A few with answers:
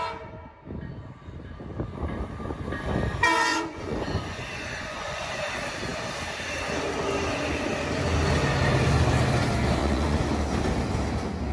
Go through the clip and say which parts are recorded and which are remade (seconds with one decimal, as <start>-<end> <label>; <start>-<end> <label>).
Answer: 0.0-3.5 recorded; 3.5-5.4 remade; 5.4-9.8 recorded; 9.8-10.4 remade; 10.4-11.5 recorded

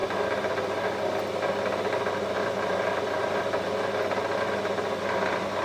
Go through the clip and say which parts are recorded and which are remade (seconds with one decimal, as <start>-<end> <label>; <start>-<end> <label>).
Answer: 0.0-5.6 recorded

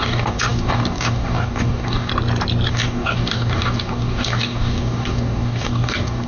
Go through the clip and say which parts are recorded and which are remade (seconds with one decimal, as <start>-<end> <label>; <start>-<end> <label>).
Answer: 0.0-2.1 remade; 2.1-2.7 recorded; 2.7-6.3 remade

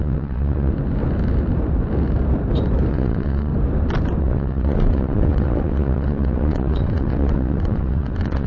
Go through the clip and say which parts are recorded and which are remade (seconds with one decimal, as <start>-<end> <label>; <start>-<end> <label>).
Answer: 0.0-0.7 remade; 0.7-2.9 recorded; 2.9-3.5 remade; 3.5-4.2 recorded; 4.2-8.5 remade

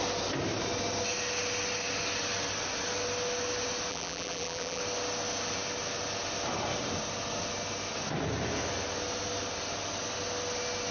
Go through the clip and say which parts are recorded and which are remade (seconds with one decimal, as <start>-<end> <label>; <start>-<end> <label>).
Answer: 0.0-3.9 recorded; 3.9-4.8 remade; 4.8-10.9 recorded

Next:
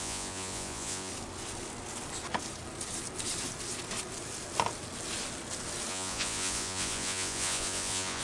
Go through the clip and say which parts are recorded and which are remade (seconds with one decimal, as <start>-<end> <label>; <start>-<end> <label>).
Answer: 0.0-1.1 remade; 1.1-5.9 recorded; 5.9-8.2 remade

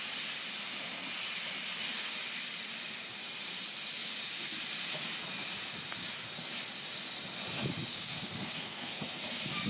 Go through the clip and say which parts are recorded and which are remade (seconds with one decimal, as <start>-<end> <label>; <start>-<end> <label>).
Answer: 0.0-7.9 recorded; 7.9-9.0 remade; 9.0-9.7 recorded

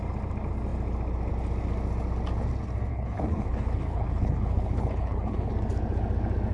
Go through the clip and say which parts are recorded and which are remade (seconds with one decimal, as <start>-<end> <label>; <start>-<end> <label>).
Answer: 0.0-2.9 recorded; 2.9-5.5 remade; 5.5-6.5 recorded